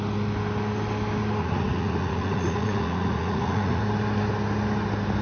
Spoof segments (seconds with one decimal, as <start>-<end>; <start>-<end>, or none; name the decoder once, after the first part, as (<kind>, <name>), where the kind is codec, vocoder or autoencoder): 1.4-3.8 (vocoder, Vocos)